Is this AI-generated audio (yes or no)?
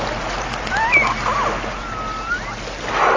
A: no